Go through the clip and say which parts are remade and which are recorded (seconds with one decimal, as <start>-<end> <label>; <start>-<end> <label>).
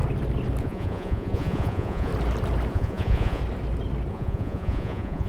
0.0-0.6 recorded; 0.6-2.1 remade; 2.1-2.7 recorded; 2.7-3.4 remade; 3.4-4.1 recorded; 4.1-5.3 remade